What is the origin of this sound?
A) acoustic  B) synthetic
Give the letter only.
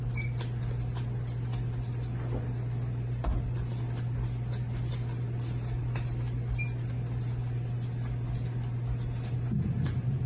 A